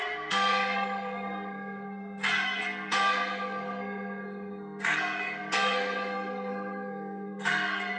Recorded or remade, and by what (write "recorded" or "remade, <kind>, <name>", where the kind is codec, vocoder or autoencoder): remade, codec, SNAC